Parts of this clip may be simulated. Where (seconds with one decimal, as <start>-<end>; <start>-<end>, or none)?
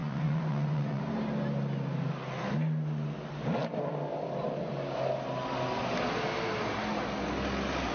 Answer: 0.0-1.0